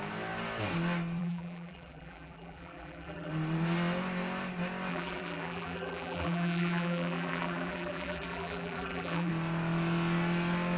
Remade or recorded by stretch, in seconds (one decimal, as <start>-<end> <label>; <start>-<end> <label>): 0.0-1.2 recorded; 1.2-3.3 remade; 3.3-4.9 recorded; 4.9-9.3 remade; 9.3-10.8 recorded